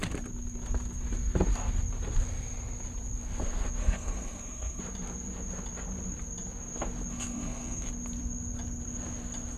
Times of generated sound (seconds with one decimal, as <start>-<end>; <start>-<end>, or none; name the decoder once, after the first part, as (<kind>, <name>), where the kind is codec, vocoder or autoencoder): 3.8-4.8 (codec, SNAC); 7.1-7.9